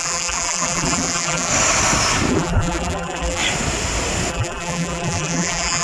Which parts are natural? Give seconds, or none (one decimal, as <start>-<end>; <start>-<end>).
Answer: 1.5-2.3; 3.4-4.3